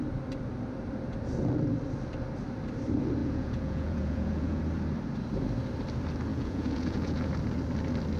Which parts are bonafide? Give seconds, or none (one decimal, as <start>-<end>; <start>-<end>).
0.0-3.2; 4.6-6.3; 7.3-8.2

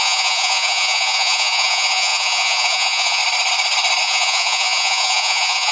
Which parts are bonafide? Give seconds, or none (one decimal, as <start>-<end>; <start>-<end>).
3.2-4.0